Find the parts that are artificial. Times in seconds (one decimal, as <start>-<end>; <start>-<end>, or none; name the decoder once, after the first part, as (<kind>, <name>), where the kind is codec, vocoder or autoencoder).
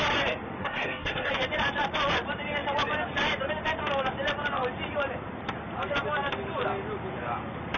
0.6-1.3 (codec, SNAC)